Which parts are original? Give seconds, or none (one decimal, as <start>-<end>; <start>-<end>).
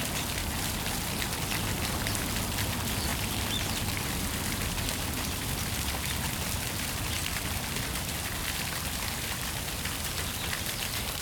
0.0-11.2